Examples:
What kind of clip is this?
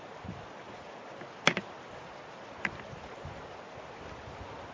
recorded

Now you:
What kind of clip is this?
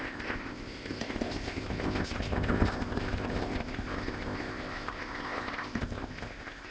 remade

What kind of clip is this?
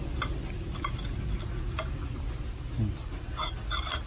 recorded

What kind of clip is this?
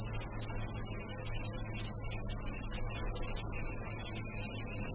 recorded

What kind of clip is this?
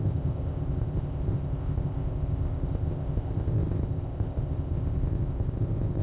remade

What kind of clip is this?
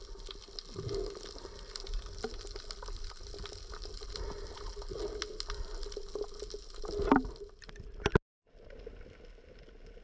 recorded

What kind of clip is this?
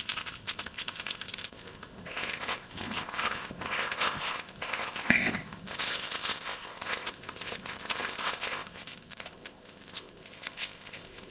remade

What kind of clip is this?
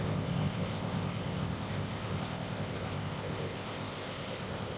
remade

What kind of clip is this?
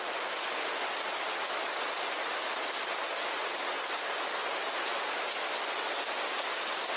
recorded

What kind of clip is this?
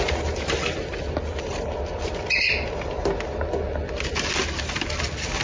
recorded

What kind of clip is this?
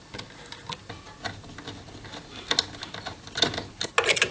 recorded